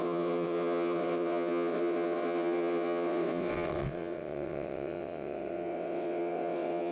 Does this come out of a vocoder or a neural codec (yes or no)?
yes